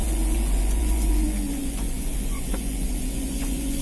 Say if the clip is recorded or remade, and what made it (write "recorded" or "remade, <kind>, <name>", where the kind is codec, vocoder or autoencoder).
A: remade, vocoder, Vocos